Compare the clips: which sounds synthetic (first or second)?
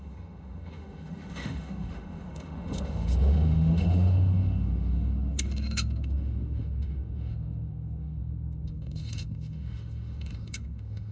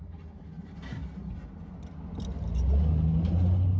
first